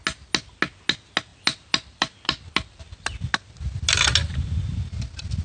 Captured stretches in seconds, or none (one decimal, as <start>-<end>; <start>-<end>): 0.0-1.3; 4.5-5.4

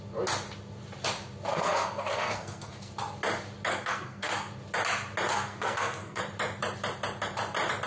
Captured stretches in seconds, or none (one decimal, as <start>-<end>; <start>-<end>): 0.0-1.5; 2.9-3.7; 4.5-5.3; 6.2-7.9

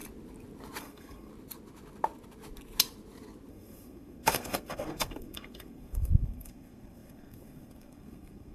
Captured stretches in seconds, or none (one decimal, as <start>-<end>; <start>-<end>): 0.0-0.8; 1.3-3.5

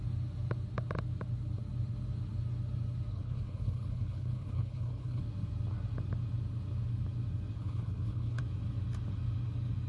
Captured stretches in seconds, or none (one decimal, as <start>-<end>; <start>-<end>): 0.0-3.1; 5.2-7.6; 8.4-9.9

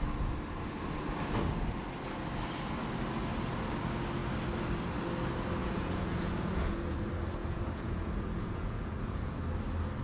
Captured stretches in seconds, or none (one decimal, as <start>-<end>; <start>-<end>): 0.0-5.6; 7.0-7.4; 9.4-10.0